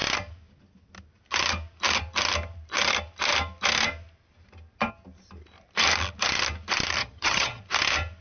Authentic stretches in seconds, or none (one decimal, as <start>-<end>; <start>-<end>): 0.0-7.0; 7.6-8.2